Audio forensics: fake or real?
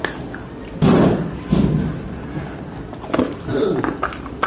real